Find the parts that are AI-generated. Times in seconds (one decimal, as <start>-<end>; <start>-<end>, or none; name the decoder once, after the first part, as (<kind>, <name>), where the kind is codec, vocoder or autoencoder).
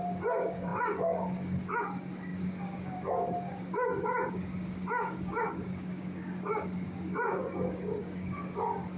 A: 0.0-9.0 (codec, DAC)